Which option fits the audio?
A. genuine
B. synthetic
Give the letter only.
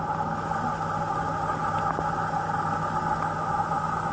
A